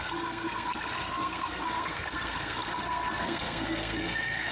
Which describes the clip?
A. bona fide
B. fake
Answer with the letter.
B